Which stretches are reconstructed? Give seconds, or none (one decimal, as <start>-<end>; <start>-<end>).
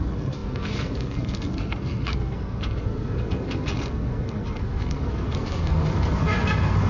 0.0-6.9